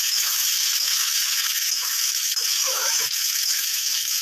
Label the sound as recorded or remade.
remade